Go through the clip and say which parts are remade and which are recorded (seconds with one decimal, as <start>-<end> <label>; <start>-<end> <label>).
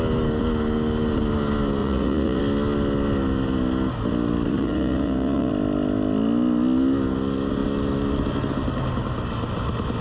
0.0-1.8 recorded; 1.8-2.4 remade; 2.4-4.5 recorded; 4.5-5.5 remade; 5.5-10.0 recorded